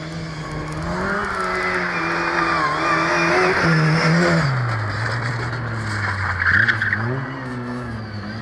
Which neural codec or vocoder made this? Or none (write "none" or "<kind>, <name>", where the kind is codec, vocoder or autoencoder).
none